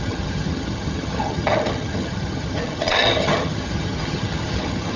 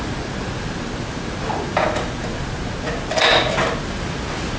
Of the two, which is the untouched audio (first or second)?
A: second